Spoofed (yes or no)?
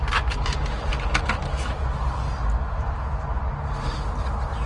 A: no